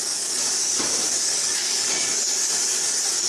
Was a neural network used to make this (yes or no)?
yes